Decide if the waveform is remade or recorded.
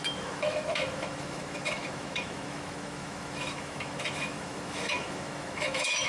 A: remade